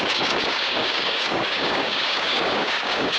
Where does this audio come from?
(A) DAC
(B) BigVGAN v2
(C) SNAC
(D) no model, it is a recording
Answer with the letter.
A